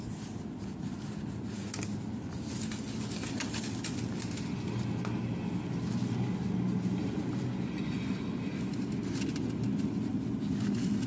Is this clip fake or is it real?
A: real